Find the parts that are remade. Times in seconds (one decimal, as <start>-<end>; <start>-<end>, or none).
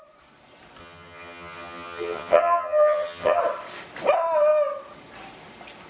0.8-3.4